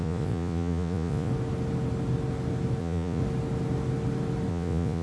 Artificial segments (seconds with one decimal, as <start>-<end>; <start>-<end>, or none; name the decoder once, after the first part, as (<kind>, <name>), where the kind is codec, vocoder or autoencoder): 0.0-1.3 (vocoder, Vocos); 2.8-3.2; 4.5-5.0